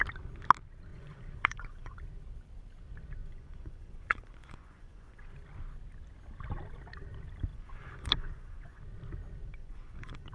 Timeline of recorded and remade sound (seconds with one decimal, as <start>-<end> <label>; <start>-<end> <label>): 0.0-0.9 recorded; 0.9-2.0 remade; 2.0-3.2 recorded; 3.2-5.3 remade; 5.3-7.5 recorded; 7.5-8.8 remade; 8.8-9.5 recorded; 9.5-10.3 remade

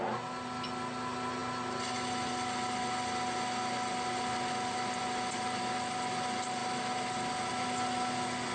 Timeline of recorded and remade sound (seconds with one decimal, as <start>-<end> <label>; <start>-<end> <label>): 0.0-8.5 recorded